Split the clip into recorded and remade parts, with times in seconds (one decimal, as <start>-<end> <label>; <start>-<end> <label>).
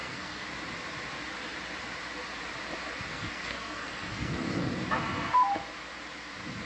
0.0-0.5 remade; 0.5-3.1 recorded; 3.1-4.7 remade; 4.7-6.7 recorded